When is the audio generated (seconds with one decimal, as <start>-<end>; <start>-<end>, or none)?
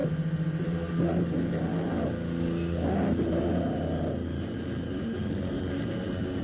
none